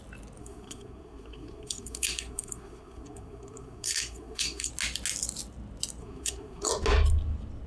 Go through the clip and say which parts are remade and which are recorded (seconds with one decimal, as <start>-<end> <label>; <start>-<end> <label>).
0.0-0.4 recorded; 0.4-4.7 remade; 4.7-6.0 recorded; 6.0-6.7 remade; 6.7-7.7 recorded